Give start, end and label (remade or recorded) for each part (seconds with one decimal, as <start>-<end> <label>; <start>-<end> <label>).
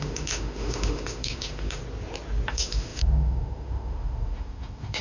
0.0-1.8 remade; 1.8-2.5 recorded; 2.5-5.0 remade